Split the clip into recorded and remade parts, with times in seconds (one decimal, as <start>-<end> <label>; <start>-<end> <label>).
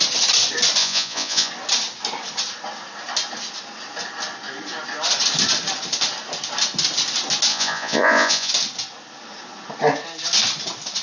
0.0-0.8 recorded; 0.8-1.5 remade; 1.5-7.5 recorded; 7.5-8.5 remade; 8.5-11.0 recorded